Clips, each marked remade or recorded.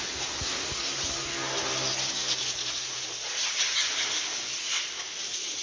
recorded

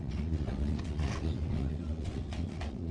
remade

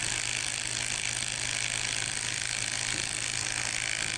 recorded